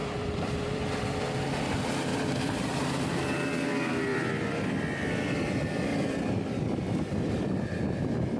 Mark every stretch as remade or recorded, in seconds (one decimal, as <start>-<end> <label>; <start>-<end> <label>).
0.0-1.0 remade; 1.0-2.1 recorded; 2.1-2.8 remade; 2.8-4.1 recorded; 4.1-6.2 remade; 6.2-8.4 recorded